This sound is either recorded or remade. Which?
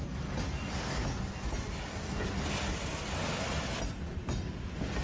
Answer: recorded